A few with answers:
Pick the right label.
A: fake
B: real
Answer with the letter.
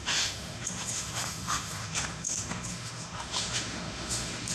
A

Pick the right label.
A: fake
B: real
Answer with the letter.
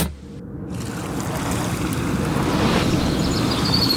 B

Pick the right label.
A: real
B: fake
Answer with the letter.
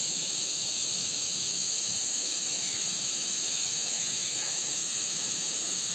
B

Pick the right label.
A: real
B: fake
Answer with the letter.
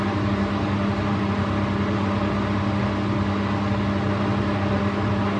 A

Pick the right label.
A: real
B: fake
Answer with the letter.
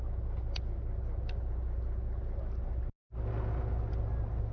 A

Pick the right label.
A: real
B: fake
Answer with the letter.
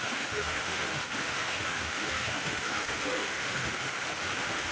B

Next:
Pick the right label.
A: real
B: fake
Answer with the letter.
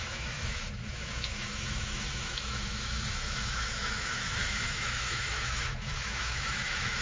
B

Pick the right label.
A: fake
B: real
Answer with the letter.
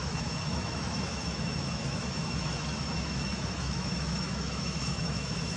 A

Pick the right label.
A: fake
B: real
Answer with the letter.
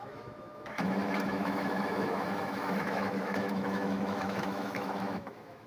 A